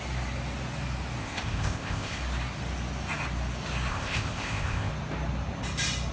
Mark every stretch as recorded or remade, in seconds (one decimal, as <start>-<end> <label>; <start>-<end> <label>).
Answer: 0.0-1.2 recorded; 1.2-2.2 remade; 2.2-3.9 recorded; 3.9-4.9 remade; 4.9-6.1 recorded